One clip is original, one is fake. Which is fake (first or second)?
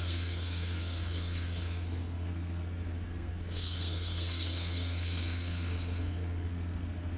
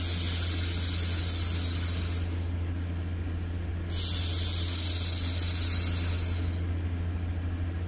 first